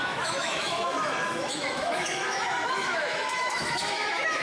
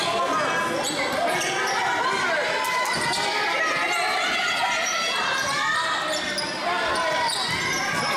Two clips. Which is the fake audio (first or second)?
first